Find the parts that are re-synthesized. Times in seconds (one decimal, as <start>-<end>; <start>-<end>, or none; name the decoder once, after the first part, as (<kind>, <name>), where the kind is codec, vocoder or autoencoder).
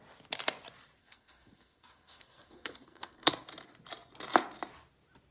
1.0-3.3 (codec, SNAC)